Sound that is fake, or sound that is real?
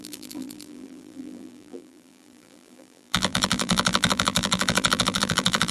fake